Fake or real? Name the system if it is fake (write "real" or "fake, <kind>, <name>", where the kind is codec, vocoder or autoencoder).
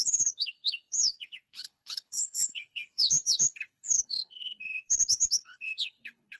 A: fake, codec, HILCodec